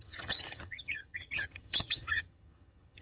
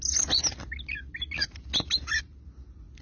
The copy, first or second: first